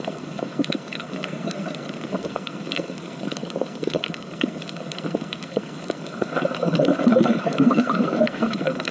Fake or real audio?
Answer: fake